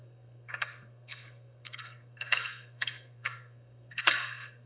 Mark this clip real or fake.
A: fake